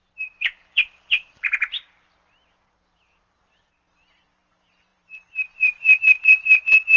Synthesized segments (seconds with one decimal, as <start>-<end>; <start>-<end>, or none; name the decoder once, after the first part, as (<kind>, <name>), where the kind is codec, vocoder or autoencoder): 0.0-7.0 (vocoder, BigVGAN v2)

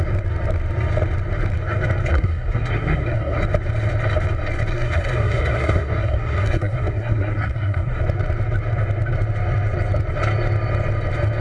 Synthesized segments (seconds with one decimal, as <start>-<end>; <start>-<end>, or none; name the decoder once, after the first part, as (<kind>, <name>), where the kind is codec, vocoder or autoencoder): 2.1-3.4 (codec, SNAC); 4.7-8.0

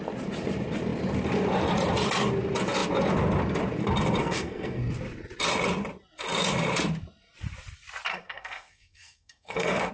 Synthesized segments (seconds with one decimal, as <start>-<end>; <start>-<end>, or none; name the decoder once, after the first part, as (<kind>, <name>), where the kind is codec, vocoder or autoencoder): 4.2-4.8 (codec, SNAC); 8.1-9.9

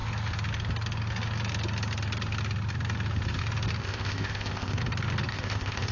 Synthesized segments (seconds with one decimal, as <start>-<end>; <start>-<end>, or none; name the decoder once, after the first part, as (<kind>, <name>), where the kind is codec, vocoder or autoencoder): 3.8-4.8 (codec, ZipCodec); 5.3-5.9

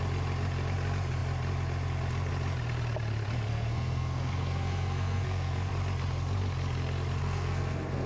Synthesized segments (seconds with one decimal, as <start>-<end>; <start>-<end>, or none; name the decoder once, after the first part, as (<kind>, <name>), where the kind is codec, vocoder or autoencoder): 3.5-5.7 (codec, SNAC); 7.2-8.1

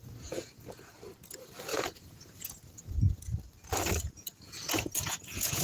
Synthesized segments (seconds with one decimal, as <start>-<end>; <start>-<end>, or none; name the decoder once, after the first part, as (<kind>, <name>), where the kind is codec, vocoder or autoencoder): 0.0-3.3 (vocoder, Vocos); 4.0-5.6

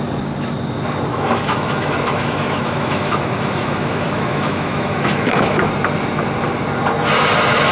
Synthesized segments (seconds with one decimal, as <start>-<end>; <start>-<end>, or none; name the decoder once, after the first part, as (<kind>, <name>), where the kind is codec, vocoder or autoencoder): 1.1-5.7 (autoencoder, DAC-VAE)

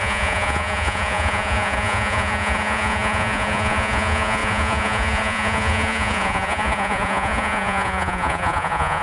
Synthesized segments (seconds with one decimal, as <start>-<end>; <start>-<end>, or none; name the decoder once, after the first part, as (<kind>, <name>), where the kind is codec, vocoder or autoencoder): 0.0-9.0 (vocoder, Vocos)